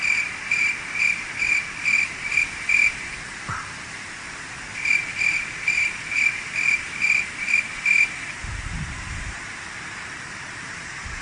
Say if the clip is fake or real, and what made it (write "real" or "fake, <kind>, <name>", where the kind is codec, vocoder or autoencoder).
fake, vocoder, BigVGAN v2